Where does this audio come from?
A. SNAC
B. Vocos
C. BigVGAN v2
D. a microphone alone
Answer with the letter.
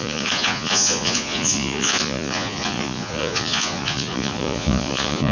B